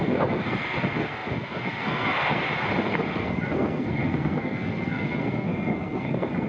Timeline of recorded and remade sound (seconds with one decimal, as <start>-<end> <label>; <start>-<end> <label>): 0.0-2.4 remade; 2.4-2.9 recorded; 2.9-6.5 remade